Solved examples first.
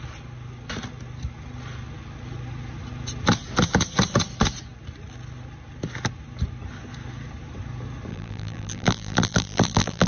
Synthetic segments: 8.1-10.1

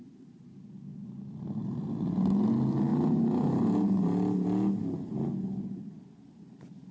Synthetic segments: none